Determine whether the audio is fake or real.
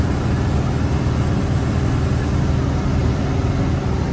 real